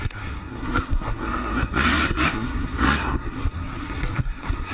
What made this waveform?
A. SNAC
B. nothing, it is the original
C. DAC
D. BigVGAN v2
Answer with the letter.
A